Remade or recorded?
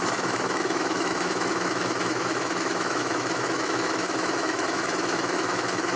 remade